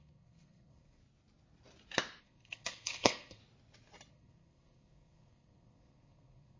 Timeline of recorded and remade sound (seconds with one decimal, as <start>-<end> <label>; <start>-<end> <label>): 0.0-1.0 remade; 1.0-2.2 recorded; 2.2-3.4 remade; 3.4-4.1 recorded; 4.1-6.6 remade